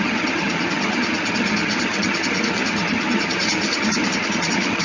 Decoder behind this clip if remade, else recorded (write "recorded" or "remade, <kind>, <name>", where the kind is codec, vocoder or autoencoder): remade, vocoder, HiFi-GAN